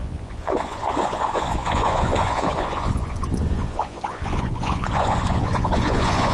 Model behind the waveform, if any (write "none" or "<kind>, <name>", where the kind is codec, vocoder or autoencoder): vocoder, Vocos